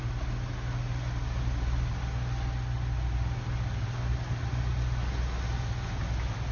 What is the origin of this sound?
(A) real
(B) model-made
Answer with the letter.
A